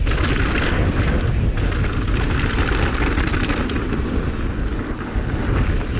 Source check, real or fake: real